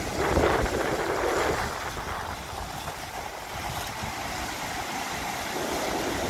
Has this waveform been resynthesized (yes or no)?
no